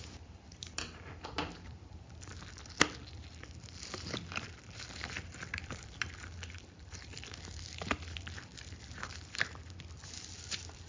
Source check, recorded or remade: remade